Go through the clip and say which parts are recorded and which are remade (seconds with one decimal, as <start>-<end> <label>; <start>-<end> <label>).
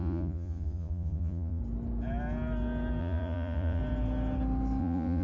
0.0-1.6 remade; 1.6-3.0 recorded; 3.0-3.8 remade; 3.8-4.8 recorded; 4.8-5.2 remade